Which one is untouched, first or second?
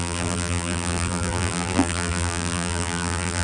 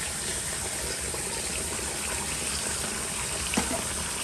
second